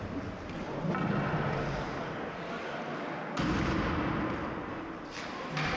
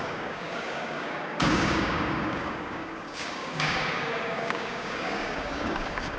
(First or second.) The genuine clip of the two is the first